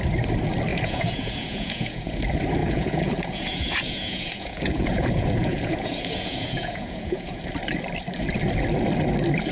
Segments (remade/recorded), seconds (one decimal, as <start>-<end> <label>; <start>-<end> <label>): 0.0-0.7 recorded; 0.7-2.2 remade; 2.2-2.6 recorded; 2.6-7.4 remade; 7.4-9.5 recorded